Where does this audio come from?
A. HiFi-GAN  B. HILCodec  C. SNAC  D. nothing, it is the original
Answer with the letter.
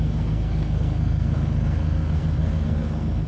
C